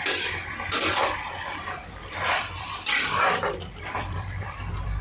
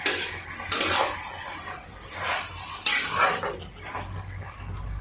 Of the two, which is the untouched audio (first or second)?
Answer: second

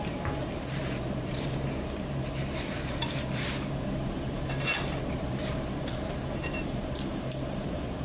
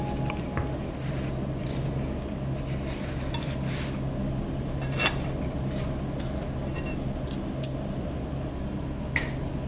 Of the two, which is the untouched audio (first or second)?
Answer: second